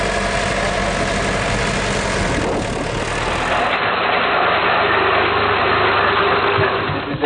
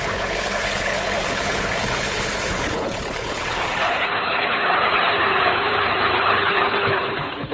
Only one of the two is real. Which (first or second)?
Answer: first